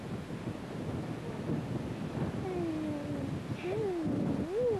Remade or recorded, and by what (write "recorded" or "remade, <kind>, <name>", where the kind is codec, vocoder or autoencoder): recorded